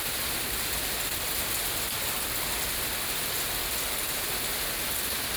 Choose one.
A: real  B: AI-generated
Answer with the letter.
A